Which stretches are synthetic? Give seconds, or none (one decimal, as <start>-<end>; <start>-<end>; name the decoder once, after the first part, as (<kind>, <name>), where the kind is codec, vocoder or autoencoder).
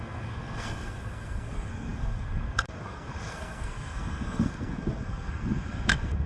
0.0-6.3 (codec, SNAC)